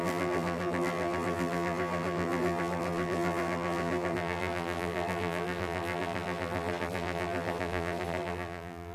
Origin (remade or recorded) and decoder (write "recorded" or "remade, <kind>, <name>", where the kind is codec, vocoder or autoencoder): remade, vocoder, BigVGAN v2